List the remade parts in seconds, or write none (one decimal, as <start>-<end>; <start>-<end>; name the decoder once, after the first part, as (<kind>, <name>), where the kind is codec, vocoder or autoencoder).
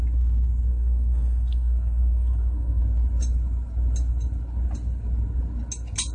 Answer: 0.7-2.8 (codec, SNAC)